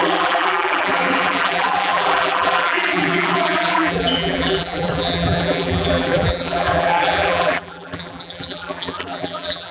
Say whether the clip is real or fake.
fake